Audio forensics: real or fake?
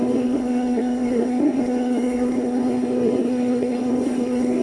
fake